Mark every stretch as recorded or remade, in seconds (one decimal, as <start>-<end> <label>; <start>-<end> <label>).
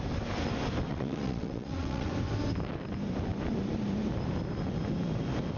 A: 0.0-0.9 recorded; 0.9-2.1 remade; 2.1-5.6 recorded